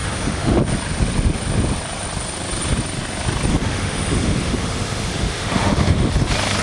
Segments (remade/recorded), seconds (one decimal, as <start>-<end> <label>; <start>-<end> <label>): 0.0-0.6 remade; 0.6-3.5 recorded; 3.5-6.1 remade; 6.1-6.6 recorded